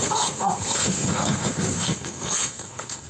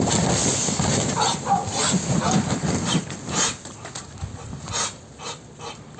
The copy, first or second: first